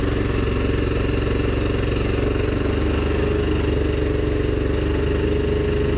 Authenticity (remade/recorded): recorded